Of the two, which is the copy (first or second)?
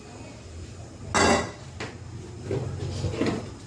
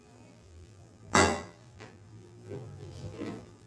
second